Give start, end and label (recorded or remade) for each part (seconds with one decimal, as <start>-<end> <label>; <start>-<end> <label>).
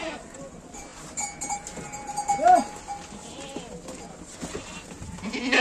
0.0-5.6 recorded